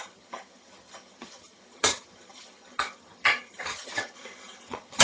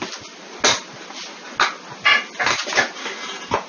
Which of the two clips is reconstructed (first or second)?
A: first